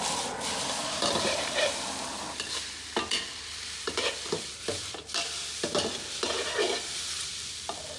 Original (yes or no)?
no